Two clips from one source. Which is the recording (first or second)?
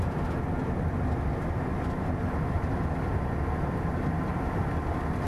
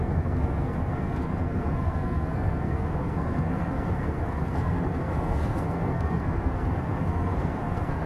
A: first